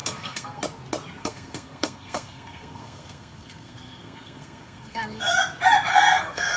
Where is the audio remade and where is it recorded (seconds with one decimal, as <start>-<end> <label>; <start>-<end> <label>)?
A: 0.0-0.6 remade; 0.6-1.2 recorded; 1.2-5.2 remade; 5.2-5.9 recorded; 5.9-6.6 remade